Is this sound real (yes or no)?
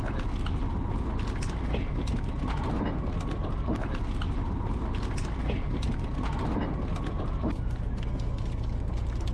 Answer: yes